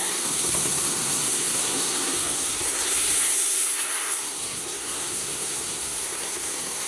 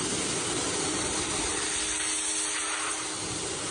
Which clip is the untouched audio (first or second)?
second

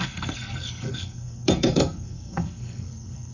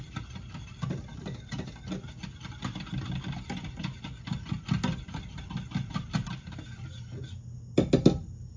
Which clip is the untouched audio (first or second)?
second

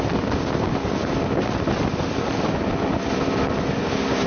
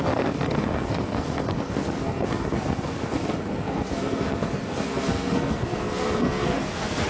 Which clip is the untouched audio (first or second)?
first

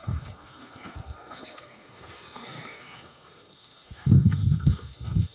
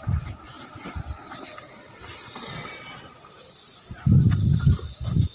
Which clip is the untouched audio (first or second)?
second